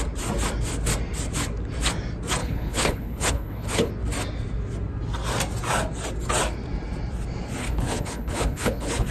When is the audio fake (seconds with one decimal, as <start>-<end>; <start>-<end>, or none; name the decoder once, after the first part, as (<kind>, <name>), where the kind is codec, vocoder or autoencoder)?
2.4-3.9 (codec, HILCodec); 7.6-9.1